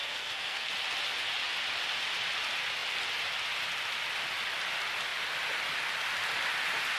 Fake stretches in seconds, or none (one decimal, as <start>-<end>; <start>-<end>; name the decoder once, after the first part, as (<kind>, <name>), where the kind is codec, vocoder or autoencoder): 0.0-0.7 (codec, SNAC)